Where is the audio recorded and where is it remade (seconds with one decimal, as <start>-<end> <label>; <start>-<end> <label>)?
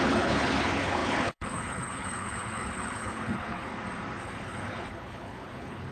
0.0-3.7 remade; 3.7-4.2 recorded; 4.2-5.9 remade